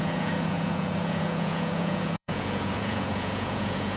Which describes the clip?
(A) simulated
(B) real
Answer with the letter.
A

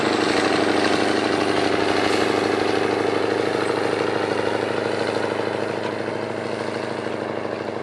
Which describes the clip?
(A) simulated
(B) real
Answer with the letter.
B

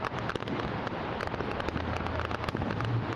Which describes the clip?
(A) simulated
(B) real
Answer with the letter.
B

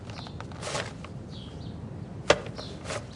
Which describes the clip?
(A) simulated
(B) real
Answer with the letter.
B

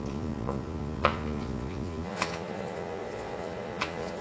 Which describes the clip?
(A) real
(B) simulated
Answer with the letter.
B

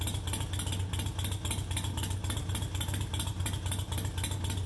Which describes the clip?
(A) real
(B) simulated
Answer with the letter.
A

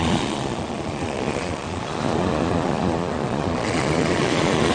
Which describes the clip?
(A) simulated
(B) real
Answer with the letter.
A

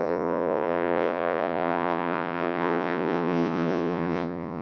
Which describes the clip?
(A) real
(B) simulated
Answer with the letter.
B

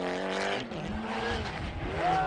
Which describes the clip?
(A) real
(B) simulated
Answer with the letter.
A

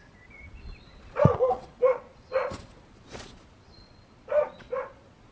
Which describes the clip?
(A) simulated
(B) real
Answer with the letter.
A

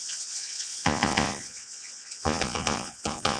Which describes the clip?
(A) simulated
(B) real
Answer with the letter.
A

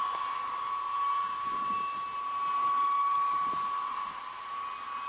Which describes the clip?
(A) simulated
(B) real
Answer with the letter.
B